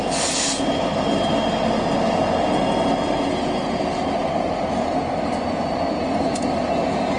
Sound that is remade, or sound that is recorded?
recorded